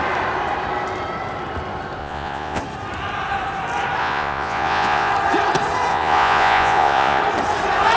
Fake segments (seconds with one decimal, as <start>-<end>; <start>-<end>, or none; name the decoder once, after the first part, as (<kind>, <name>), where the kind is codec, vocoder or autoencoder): 2.0-2.6 (vocoder, Vocos); 4.0-5.1; 5.9-7.2